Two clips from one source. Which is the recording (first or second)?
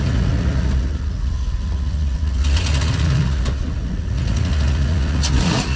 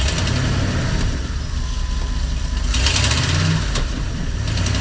second